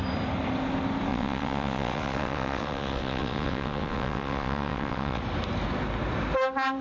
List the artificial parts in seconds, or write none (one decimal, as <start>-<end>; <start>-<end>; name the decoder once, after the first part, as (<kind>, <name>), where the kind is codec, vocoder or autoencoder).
1.1-5.2 (vocoder, WaveNeXt)